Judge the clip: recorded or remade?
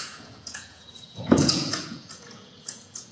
remade